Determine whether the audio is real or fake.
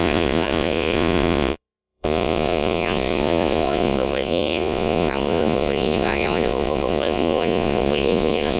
fake